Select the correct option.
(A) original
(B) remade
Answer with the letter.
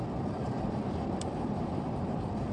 B